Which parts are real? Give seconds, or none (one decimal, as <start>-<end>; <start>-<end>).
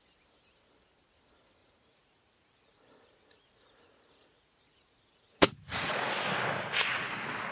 0.0-1.6; 6.1-7.5